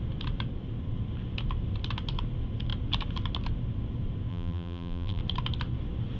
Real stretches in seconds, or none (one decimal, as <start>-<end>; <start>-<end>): 0.0-4.3; 5.2-6.2